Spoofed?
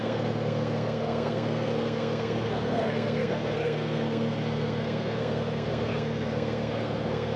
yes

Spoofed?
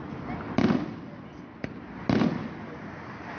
no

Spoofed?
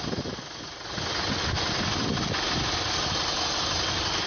no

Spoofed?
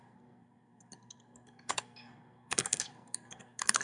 yes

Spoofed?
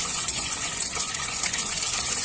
yes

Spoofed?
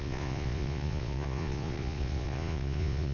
yes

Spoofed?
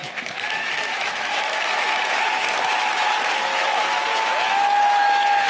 yes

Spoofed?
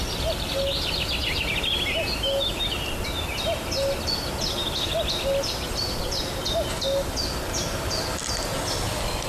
no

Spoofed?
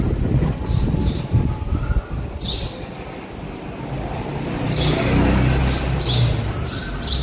no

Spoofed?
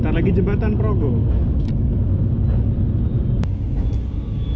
no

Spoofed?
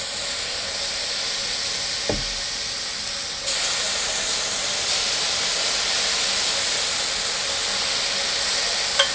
no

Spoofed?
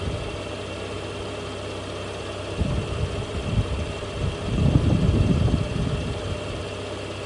no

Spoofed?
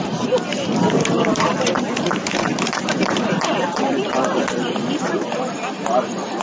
yes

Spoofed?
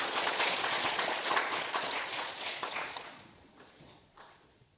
yes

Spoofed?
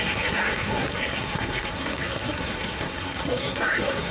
yes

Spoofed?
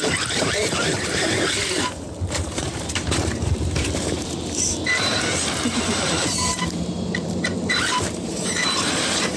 yes